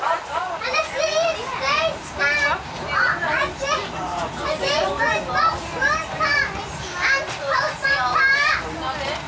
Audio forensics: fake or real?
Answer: real